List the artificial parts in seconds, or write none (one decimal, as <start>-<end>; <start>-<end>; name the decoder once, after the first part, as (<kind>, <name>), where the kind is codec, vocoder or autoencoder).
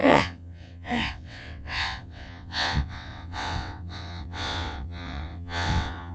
0.0-6.1 (vocoder, WaveNeXt)